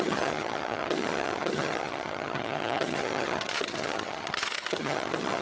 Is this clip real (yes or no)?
no